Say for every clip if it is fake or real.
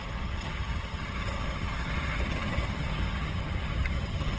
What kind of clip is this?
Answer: fake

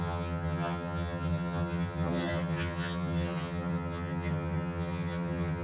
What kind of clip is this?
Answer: fake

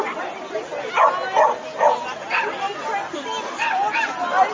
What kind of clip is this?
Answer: real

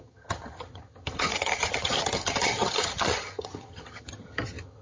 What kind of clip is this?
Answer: fake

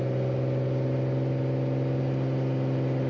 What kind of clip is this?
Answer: real